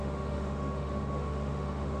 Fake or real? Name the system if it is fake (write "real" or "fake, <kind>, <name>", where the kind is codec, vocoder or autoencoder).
fake, autoencoder, DAC-VAE